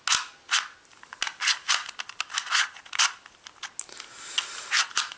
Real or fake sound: real